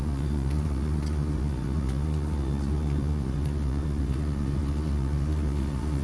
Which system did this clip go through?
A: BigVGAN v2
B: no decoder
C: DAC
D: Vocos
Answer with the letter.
D